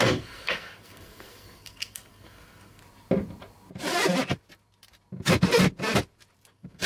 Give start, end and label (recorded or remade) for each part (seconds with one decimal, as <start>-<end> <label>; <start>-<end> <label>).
0.0-2.8 remade; 2.8-6.5 recorded; 6.5-6.9 remade